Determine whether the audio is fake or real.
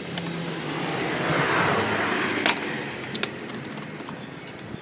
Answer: real